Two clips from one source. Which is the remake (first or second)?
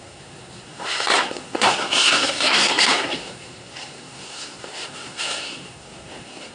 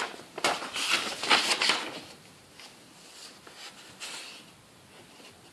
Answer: first